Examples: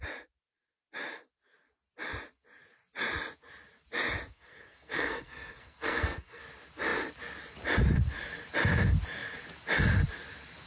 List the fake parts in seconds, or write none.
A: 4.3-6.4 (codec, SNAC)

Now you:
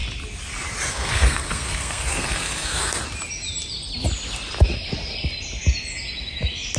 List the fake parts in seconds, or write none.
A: 0.9-3.0 (codec, SNAC)

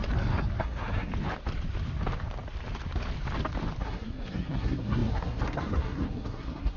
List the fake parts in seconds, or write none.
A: 0.6-1.1 (codec, SNAC); 3.8-6.8

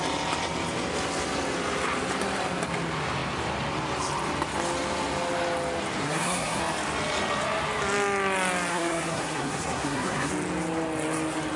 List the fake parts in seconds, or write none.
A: 6.0-6.6 (codec, SNAC); 8.7-10.3